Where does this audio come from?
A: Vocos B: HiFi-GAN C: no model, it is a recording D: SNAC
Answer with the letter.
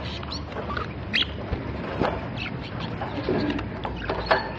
C